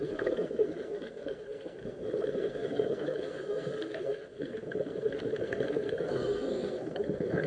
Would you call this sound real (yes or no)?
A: no